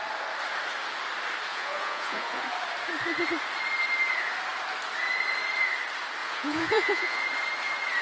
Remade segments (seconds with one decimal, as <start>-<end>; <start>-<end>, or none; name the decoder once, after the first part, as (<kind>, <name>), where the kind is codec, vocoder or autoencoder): 1.5-2.4 (vocoder, Vocos); 6.2-7.2

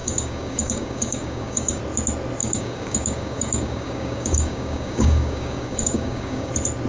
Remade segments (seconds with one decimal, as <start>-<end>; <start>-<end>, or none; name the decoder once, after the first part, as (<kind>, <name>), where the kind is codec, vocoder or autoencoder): 0.0-1.8 (codec, DAC); 2.4-6.5

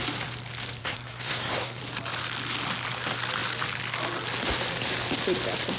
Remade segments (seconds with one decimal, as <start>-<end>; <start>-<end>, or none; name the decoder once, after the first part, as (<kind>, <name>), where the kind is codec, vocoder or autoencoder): 0.8-1.8 (codec, SNAC)

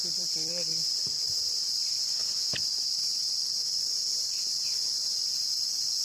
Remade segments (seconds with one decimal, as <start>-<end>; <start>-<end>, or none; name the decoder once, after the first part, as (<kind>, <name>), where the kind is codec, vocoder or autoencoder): 0.0-3.6 (vocoder, BigVGAN v2); 4.7-6.0

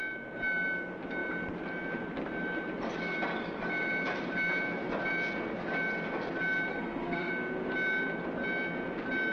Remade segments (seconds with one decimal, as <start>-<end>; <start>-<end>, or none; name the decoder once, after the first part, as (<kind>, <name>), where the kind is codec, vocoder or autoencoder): 6.7-7.3 (codec, SNAC)

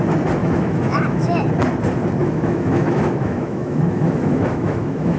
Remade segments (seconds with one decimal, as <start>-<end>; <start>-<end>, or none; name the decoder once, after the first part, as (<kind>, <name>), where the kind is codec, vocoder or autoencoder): 0.4-1.4 (autoencoder, DAC-VAE); 2.2-5.2